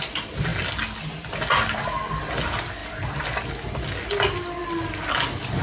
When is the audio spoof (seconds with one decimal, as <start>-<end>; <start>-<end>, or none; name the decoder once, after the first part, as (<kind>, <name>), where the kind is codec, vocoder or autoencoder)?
none